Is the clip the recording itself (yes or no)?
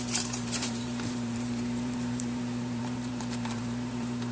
no